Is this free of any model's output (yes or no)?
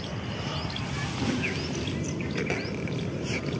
yes